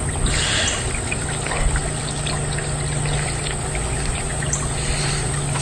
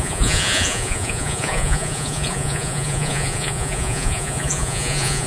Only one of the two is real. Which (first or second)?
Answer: first